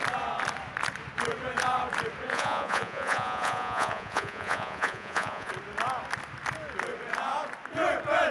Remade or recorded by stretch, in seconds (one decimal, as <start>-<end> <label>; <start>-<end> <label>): 0.0-2.3 recorded; 2.3-5.5 remade; 5.5-8.3 recorded